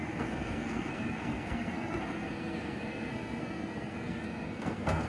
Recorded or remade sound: remade